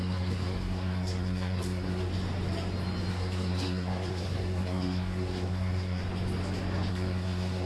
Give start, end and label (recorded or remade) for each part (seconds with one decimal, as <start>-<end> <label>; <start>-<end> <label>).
0.0-2.1 remade; 2.1-3.1 recorded; 3.1-6.0 remade; 6.0-6.9 recorded; 6.9-7.7 remade